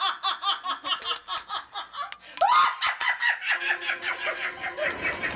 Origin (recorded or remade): recorded